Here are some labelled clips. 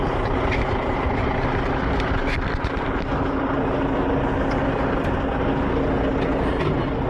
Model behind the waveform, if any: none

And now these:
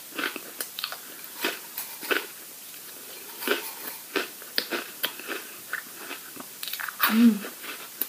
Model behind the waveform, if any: vocoder, BigVGAN v2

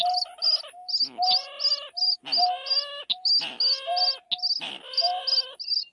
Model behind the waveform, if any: none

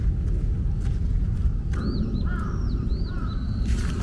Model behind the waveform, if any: none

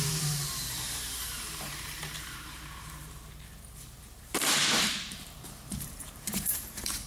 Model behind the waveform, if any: vocoder, BigVGAN v2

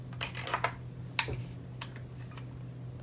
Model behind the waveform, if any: none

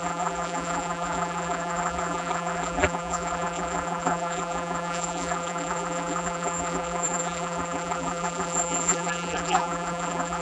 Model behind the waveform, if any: vocoder, BigVGAN v2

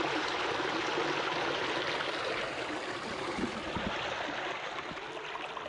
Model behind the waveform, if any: none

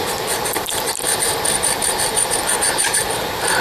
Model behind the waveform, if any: vocoder, BigVGAN v2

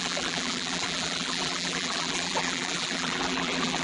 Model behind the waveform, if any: vocoder, BigVGAN v2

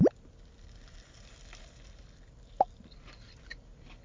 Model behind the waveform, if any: vocoder, BigVGAN v2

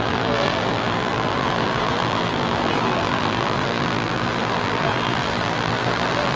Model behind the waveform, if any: vocoder, BigVGAN v2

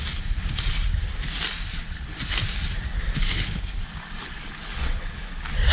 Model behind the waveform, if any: none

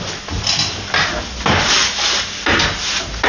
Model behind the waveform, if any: none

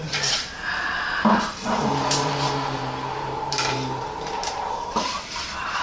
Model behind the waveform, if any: vocoder, BigVGAN v2